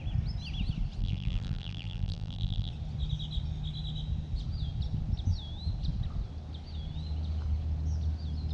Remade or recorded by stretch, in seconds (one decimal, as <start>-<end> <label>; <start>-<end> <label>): 0.0-1.0 recorded; 1.0-2.7 remade; 2.7-8.5 recorded